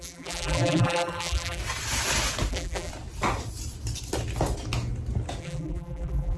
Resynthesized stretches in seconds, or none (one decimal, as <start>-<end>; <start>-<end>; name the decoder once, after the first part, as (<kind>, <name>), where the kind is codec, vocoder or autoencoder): 0.0-1.6 (vocoder, BigVGAN v2); 2.5-2.9; 5.4-6.4